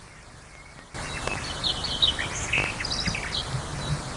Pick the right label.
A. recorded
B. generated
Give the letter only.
A